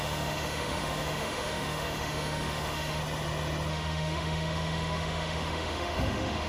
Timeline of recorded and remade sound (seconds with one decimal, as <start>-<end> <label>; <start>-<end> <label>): 0.0-3.0 remade; 3.0-3.7 recorded; 3.7-6.5 remade